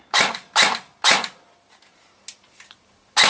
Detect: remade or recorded recorded